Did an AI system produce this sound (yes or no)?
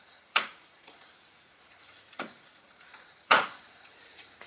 yes